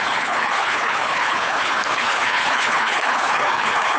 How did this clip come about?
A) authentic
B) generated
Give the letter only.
B